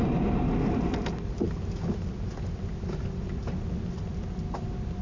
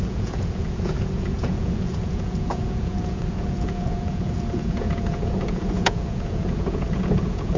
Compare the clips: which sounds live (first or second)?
first